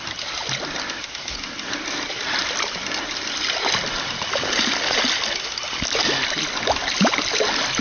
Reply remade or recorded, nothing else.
recorded